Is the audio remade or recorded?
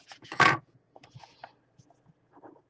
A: remade